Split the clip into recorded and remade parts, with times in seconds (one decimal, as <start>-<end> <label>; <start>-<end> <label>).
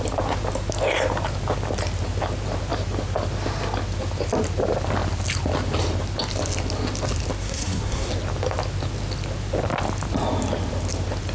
0.0-7.4 recorded; 7.4-8.1 remade; 8.1-11.3 recorded